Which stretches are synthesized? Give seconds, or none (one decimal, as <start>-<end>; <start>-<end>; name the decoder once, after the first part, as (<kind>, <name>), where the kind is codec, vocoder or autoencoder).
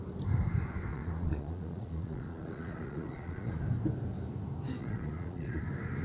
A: 0.9-3.6 (vocoder, Vocos); 4.8-5.6